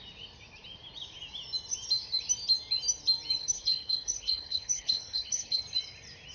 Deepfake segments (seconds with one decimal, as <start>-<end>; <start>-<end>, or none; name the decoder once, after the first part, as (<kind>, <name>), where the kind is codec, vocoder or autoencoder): 3.4-5.6 (codec, HILCodec)